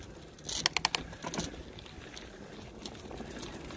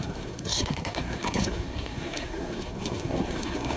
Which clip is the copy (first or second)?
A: second